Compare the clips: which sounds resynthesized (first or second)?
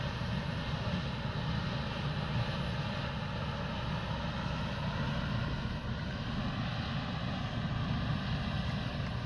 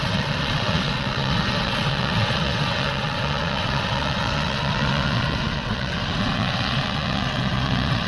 second